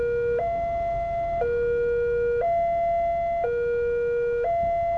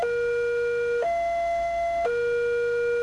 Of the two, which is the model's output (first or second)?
second